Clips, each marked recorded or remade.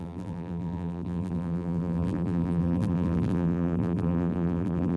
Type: remade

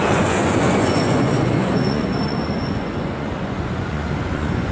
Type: remade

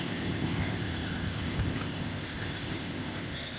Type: remade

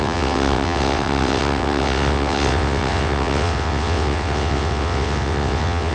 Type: remade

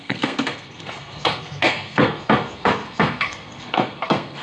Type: remade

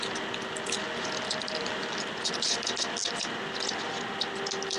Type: recorded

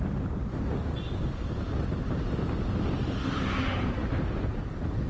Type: recorded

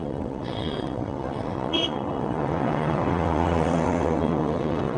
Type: remade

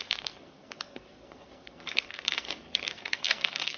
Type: remade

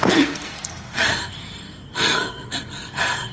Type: remade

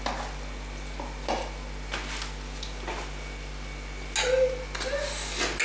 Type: recorded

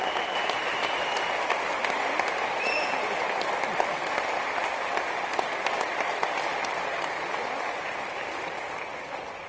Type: recorded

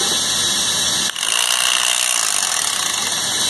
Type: recorded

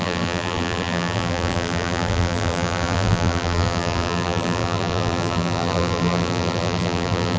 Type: remade